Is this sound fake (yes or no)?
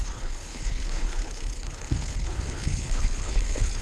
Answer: yes